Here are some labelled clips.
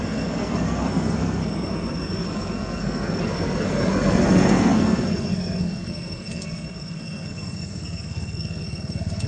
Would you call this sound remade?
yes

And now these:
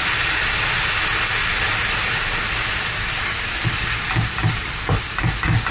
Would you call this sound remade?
no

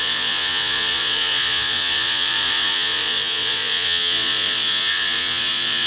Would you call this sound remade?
yes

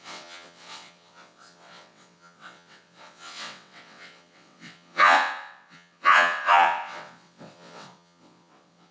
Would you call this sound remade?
yes